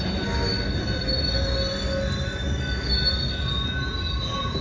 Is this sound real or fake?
real